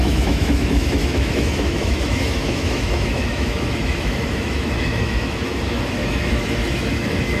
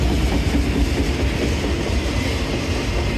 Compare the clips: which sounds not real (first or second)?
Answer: first